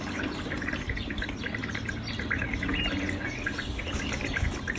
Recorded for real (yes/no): yes